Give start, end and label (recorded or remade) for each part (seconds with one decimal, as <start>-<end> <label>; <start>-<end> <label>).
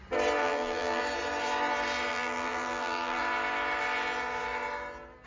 0.0-0.4 recorded; 0.4-1.0 remade; 1.0-2.1 recorded; 2.1-3.2 remade; 3.2-5.3 recorded